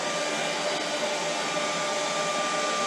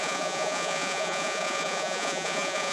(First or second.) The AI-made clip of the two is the second